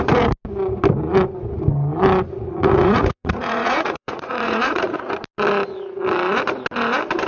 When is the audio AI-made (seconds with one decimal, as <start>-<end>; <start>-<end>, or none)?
2.4-5.0